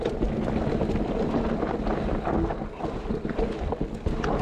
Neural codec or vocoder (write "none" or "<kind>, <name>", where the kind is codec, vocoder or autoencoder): none